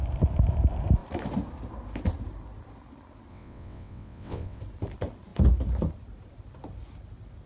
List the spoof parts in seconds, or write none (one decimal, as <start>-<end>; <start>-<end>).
3.3-4.6

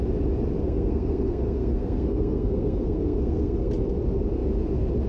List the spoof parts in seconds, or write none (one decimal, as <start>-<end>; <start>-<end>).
0.6-3.7

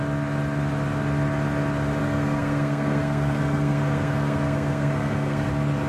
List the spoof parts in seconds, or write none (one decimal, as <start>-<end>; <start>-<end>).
2.0-5.5

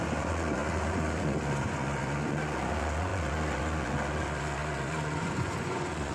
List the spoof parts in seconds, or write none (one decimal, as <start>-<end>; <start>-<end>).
0.0-6.1

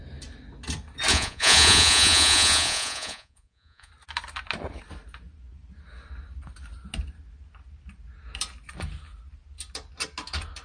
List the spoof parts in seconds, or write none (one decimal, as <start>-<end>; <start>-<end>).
1.1-3.9

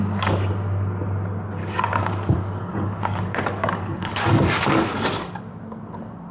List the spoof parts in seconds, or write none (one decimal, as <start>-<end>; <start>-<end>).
1.6-5.4